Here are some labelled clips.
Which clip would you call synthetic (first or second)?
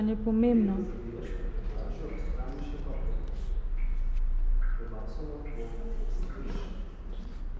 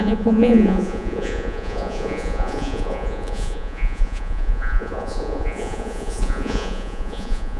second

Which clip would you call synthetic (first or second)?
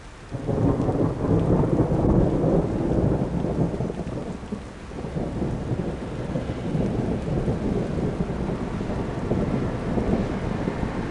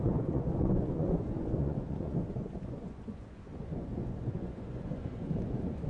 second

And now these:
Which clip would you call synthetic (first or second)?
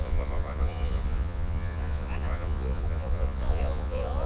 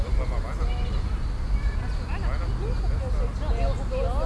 first